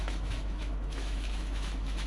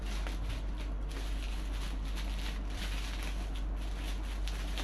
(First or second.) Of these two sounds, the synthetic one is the first